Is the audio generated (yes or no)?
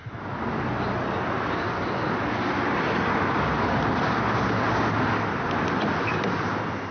no